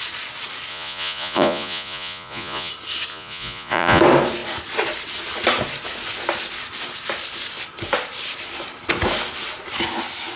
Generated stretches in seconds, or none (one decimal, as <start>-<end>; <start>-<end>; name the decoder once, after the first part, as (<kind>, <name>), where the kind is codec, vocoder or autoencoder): 0.7-2.7 (vocoder, Vocos); 3.1-4.0